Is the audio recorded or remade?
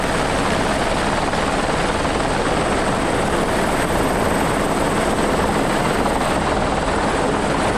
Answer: recorded